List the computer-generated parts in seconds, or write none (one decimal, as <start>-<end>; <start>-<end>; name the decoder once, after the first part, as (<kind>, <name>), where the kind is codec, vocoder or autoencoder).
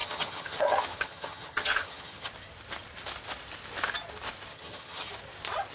0.0-2.3 (vocoder, HiFi-GAN); 4.5-5.1